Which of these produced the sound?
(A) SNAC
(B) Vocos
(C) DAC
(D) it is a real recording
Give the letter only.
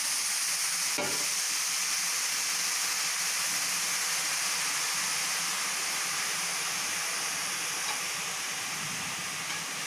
D